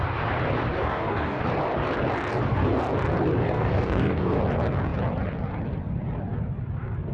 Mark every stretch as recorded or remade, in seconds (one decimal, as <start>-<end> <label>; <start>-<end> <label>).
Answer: 0.0-0.8 recorded; 0.8-1.4 remade; 1.4-3.4 recorded; 3.4-4.4 remade; 4.4-7.1 recorded